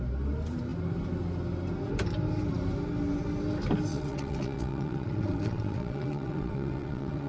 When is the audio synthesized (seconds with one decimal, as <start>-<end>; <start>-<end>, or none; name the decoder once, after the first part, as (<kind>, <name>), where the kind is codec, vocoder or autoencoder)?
3.9-7.3 (vocoder, WaveNeXt)